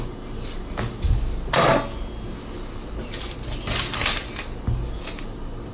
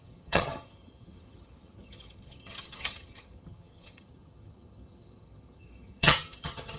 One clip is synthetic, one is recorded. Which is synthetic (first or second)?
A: second